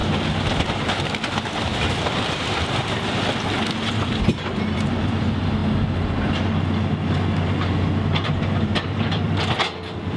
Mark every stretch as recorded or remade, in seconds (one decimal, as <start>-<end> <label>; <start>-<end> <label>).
0.0-4.2 recorded; 4.2-5.6 remade; 5.6-8.3 recorded; 8.3-10.2 remade